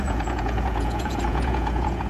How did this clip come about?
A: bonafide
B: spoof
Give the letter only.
B